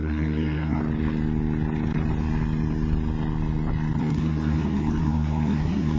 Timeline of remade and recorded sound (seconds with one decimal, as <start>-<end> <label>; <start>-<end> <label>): 0.0-0.8 remade; 0.8-4.0 recorded; 4.0-6.0 remade